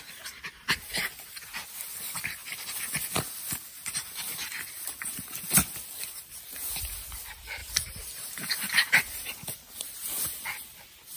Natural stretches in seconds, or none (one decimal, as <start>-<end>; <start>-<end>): 0.0-7.6; 9.0-11.2